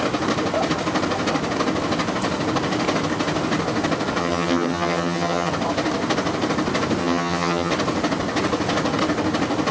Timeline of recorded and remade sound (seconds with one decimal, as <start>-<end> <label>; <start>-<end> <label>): 0.0-4.2 recorded; 4.2-5.5 remade; 5.5-7.0 recorded; 7.0-7.7 remade; 7.7-9.7 recorded